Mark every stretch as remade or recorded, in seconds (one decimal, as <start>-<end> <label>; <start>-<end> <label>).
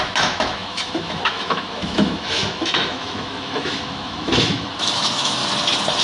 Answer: 0.0-5.4 remade; 5.4-6.0 recorded